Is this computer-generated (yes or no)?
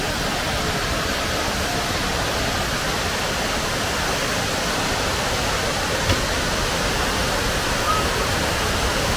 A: no